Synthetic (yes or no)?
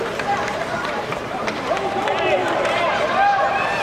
yes